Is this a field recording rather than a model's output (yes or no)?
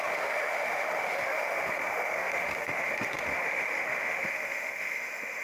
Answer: no